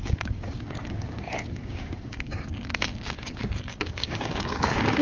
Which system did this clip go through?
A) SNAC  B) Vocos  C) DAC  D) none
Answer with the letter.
C